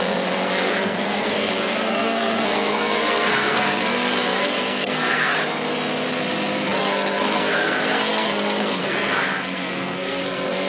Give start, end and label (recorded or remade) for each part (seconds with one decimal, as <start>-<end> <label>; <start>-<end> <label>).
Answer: 0.0-5.3 remade; 5.3-6.8 recorded; 6.8-10.7 remade

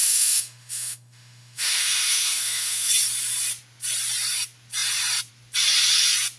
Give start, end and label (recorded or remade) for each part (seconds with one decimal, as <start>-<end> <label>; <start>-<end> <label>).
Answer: 0.0-2.9 remade; 2.9-6.4 recorded